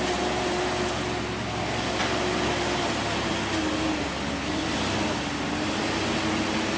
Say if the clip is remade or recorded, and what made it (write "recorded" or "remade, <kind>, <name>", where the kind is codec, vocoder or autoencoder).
recorded